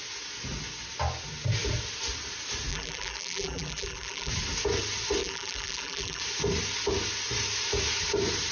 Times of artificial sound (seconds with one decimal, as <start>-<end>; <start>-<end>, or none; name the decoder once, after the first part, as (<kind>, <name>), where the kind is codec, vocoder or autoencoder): 2.7-4.3 (vocoder, BigVGAN v2); 5.2-6.2